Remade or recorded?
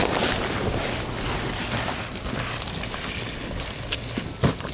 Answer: recorded